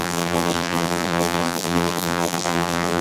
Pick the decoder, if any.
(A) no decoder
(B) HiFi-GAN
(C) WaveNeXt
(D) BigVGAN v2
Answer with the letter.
D